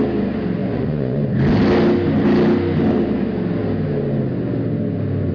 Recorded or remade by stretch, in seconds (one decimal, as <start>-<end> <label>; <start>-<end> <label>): 0.0-0.6 recorded; 0.6-1.3 remade; 1.3-5.3 recorded